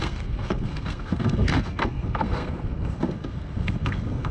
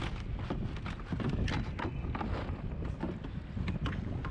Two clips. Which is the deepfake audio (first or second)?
first